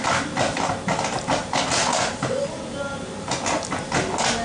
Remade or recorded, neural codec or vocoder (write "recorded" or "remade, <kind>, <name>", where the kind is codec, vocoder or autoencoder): recorded